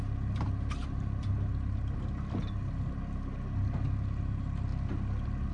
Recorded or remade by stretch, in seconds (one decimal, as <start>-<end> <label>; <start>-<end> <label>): 0.0-5.5 recorded